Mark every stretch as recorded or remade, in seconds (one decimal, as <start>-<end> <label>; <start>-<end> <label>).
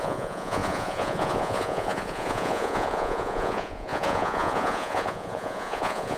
0.0-6.2 remade